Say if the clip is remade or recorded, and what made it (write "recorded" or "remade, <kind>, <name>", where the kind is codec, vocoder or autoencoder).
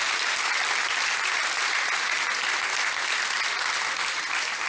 recorded